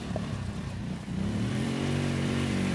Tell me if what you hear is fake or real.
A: fake